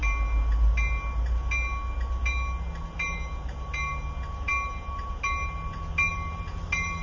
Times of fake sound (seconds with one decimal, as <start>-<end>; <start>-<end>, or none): none